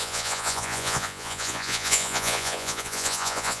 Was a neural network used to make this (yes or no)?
yes